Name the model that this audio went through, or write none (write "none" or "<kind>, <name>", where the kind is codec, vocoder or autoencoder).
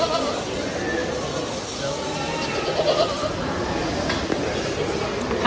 none